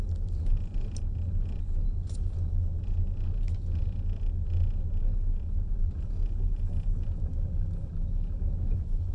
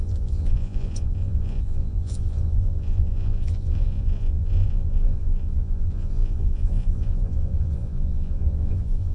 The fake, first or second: second